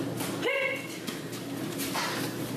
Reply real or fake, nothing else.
real